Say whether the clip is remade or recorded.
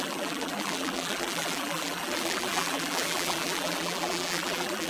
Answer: remade